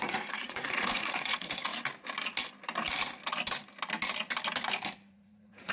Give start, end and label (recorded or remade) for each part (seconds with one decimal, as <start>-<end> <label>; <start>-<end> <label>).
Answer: 0.0-1.7 remade; 1.7-5.1 recorded; 5.1-5.7 remade